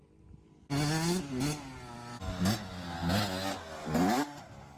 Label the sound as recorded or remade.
recorded